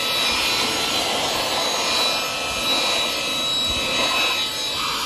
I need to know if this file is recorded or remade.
recorded